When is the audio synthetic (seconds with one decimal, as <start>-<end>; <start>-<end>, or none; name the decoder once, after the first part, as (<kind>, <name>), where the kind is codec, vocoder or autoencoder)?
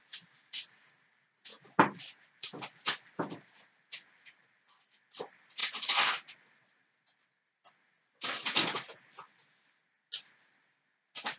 none